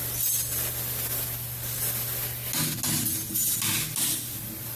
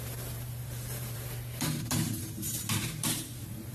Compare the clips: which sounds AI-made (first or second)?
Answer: second